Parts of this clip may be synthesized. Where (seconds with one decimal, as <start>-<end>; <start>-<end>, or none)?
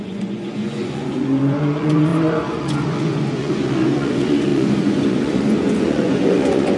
0.0-6.8